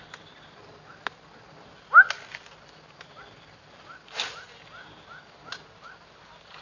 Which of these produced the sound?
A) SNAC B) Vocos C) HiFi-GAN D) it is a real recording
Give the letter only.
D